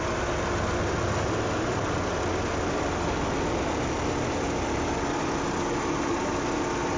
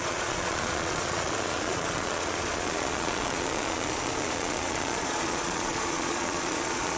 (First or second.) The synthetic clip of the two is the second